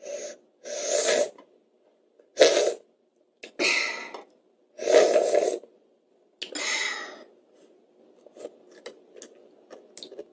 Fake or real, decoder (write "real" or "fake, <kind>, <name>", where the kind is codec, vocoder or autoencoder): real